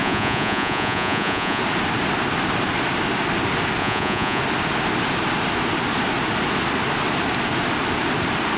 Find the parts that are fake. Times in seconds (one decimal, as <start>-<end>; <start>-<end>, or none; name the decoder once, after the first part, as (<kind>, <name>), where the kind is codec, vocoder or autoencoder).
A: 0.0-1.6 (vocoder, Vocos); 3.8-4.4